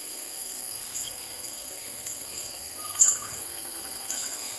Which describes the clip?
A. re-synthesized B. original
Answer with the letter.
A